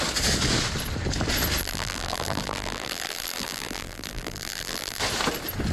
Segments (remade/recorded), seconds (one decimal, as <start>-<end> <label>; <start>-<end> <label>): 0.0-1.6 recorded; 1.6-5.0 remade; 5.0-5.7 recorded